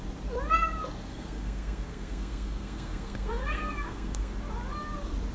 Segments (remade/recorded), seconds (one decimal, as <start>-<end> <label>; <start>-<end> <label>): 0.0-1.1 recorded; 1.1-4.3 remade; 4.3-5.3 recorded